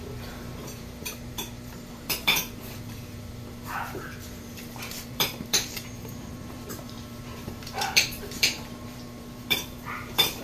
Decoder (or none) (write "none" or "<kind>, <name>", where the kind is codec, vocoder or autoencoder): vocoder, BigVGAN v2